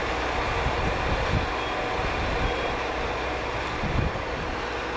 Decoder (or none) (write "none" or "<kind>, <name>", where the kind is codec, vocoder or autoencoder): none